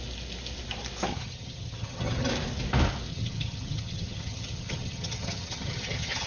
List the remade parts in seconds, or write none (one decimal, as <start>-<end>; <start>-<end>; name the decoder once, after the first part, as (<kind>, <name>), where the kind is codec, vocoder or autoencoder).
1.1-2.3 (vocoder, HiFi-GAN); 3.1-6.3